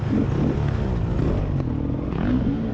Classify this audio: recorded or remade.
recorded